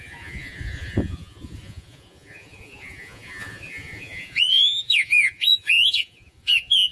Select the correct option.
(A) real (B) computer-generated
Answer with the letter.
B